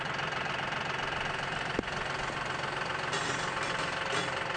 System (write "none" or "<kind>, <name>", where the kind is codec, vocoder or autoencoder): none